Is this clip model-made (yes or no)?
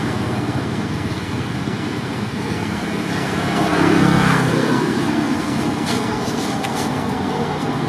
yes